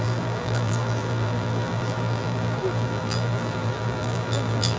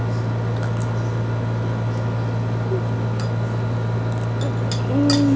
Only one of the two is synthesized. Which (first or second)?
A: first